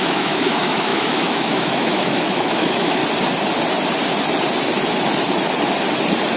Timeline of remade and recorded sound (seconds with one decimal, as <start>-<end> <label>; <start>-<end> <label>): 0.0-3.0 remade; 3.0-6.4 recorded